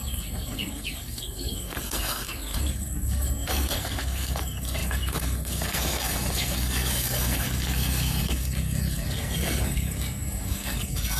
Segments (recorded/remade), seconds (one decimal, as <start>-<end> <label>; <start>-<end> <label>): 0.0-11.2 remade